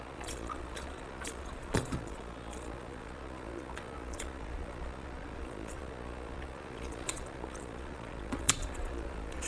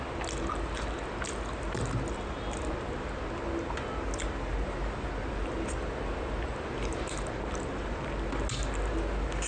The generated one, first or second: first